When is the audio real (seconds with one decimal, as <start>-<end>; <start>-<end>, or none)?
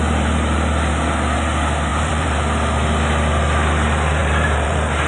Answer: 0.0-1.9; 2.4-4.2